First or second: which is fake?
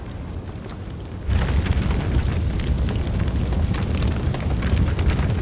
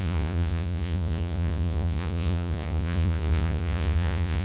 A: second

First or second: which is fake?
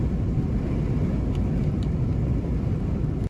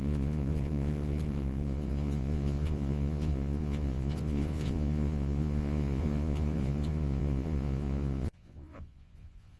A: second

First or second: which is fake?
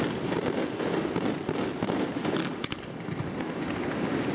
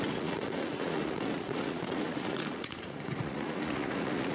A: second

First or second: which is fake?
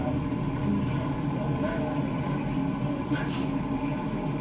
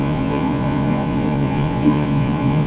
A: second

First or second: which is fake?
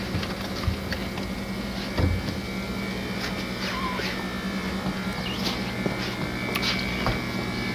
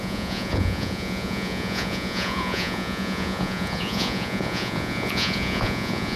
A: second